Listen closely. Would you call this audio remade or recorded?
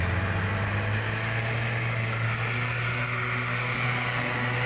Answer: recorded